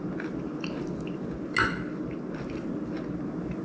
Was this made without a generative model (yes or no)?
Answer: yes